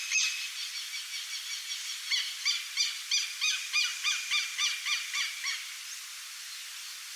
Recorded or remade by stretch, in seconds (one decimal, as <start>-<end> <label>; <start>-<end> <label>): 0.0-7.2 recorded